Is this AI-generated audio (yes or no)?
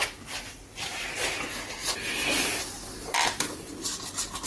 no